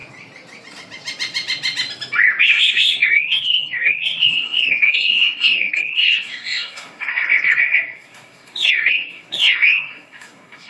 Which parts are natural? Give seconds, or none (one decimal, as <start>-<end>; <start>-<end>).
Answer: 0.0-2.4